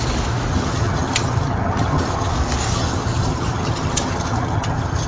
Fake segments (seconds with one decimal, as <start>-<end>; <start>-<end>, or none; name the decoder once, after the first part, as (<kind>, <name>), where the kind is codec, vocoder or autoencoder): 0.5-2.3 (vocoder, HiFi-GAN); 2.7-5.1